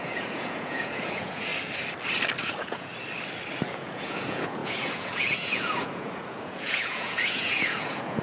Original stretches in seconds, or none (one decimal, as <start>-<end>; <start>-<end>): 1.5-2.4; 2.9-3.7